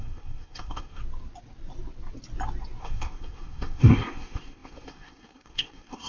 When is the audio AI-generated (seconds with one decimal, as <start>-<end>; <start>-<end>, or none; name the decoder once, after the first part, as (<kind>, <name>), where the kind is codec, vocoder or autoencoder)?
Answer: 0.0-1.0 (codec, SNAC); 2.8-6.1